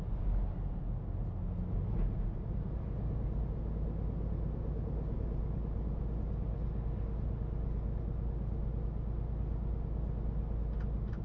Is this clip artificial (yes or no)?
no